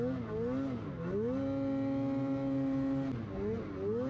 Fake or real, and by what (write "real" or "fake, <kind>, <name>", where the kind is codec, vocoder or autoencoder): real